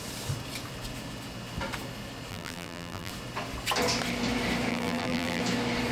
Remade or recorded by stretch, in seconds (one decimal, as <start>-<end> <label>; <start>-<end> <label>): 0.0-2.3 recorded; 2.3-3.1 remade; 3.1-4.7 recorded; 4.7-5.4 remade; 5.4-5.9 recorded

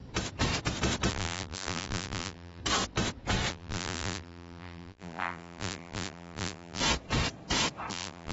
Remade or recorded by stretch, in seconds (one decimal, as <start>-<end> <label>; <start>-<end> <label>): 0.0-1.1 recorded; 1.1-2.6 remade; 2.6-3.5 recorded; 3.5-6.8 remade; 6.8-7.9 recorded; 7.9-8.3 remade